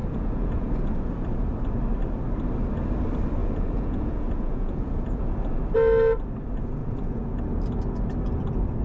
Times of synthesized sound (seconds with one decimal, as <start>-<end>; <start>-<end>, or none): 0.0-0.7; 3.4-5.3; 6.8-7.4